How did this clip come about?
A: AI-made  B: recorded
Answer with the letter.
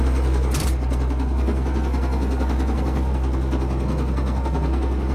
A